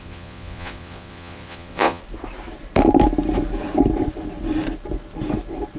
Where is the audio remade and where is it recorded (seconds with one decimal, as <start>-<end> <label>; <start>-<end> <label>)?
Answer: 0.0-2.0 remade; 2.0-5.8 recorded

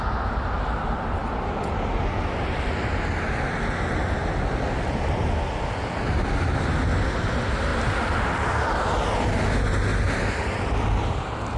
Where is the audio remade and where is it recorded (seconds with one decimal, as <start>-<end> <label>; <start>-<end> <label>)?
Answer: 0.0-4.2 recorded; 4.2-4.8 remade; 4.8-9.9 recorded; 9.9-10.6 remade; 10.6-11.6 recorded

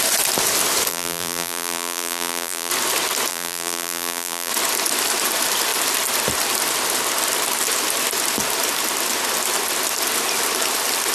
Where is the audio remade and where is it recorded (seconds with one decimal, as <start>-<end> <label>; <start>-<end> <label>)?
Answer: 0.0-0.9 recorded; 0.9-2.7 remade; 2.7-3.3 recorded; 3.3-4.5 remade; 4.5-11.1 recorded

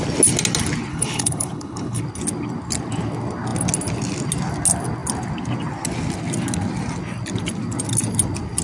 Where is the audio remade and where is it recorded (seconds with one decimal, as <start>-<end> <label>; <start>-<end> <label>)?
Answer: 0.0-0.9 recorded; 0.9-2.0 remade; 2.0-8.6 recorded